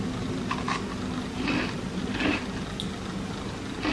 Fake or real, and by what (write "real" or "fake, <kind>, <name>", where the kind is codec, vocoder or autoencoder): real